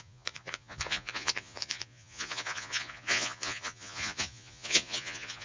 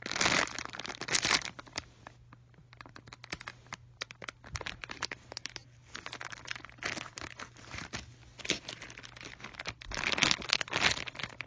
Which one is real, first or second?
second